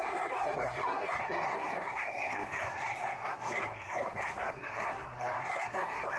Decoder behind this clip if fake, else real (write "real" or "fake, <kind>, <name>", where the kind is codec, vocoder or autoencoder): fake, codec, SNAC